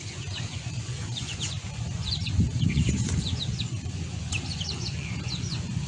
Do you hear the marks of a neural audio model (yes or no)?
yes